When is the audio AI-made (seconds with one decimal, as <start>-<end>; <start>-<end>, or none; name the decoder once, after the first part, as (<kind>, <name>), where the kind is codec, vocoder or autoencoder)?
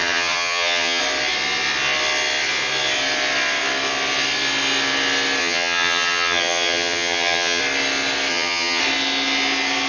0.0-1.0 (vocoder, HiFi-GAN); 5.4-7.6; 8.3-8.8